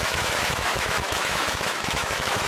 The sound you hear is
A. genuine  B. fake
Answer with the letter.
B